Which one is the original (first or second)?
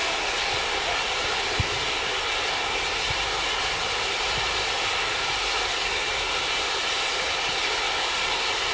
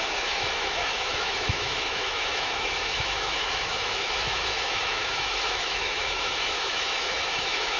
first